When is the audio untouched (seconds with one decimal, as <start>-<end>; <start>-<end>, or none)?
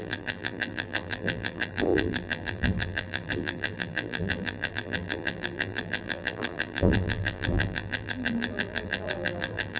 none